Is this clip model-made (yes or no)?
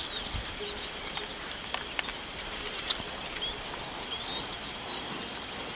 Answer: no